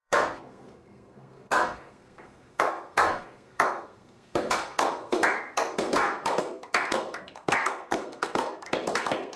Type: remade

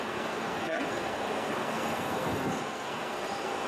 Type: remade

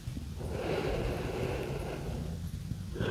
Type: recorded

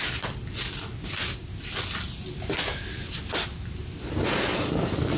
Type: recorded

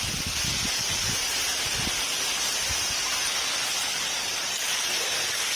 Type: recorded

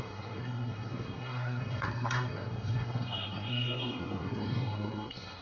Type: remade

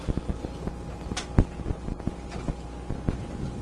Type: recorded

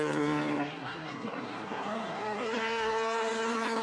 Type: remade